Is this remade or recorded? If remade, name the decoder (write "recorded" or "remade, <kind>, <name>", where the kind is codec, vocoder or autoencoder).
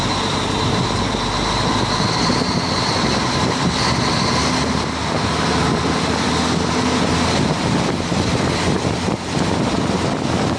recorded